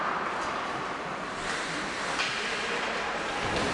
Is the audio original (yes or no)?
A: yes